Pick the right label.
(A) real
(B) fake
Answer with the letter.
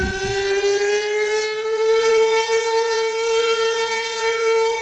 B